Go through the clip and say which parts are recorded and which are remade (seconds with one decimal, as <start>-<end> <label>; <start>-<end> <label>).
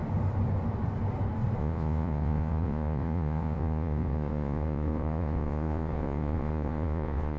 0.0-1.6 recorded; 1.6-7.4 remade